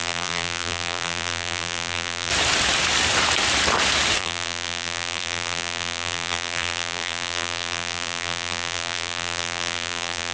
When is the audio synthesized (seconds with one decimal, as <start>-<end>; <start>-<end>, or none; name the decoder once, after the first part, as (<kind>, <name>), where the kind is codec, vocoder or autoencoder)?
0.0-2.3 (vocoder, BigVGAN v2); 4.2-10.3